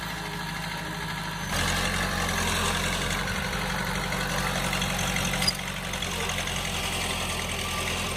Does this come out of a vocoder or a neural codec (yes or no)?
no